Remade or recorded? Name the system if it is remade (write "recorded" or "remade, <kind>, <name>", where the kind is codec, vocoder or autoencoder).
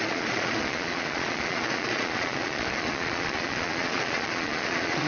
remade, vocoder, Vocos